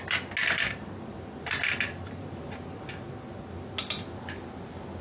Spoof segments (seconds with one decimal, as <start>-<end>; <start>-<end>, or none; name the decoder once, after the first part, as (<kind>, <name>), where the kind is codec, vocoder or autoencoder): 0.4-2.4 (vocoder, BigVGAN v2)

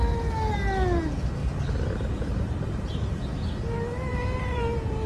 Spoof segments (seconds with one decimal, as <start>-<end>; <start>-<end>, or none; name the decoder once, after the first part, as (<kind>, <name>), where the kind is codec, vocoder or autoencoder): 1.4-3.1 (vocoder, BigVGAN v2); 4.1-5.1

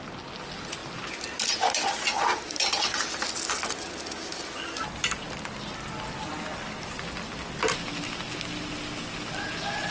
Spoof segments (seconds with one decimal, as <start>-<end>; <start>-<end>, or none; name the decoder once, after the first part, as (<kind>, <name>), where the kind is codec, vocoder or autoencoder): none